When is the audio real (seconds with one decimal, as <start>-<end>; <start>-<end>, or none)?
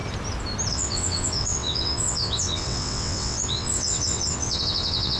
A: 0.0-0.7